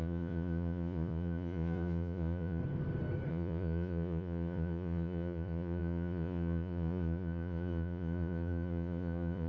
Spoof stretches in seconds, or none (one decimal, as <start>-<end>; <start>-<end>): 0.0-2.6; 3.3-9.5